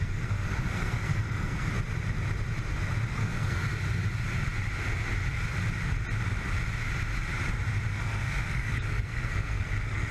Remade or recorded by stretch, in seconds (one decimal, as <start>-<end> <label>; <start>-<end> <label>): 0.0-1.7 remade; 1.7-3.1 recorded; 3.1-3.6 remade; 3.6-7.9 recorded; 7.9-10.1 remade